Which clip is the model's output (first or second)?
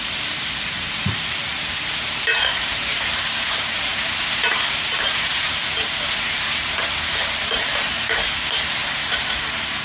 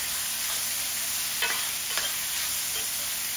first